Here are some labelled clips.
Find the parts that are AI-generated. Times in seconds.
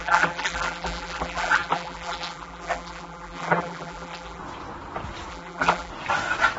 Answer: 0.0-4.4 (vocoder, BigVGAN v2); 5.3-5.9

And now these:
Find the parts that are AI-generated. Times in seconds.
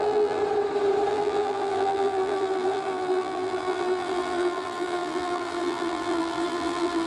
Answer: 0.0-0.4 (vocoder, BigVGAN v2); 1.1-7.1